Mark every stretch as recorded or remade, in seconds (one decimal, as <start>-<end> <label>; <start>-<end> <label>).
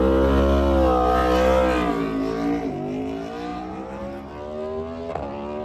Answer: 0.0-3.5 recorded; 3.5-4.3 remade; 4.3-5.6 recorded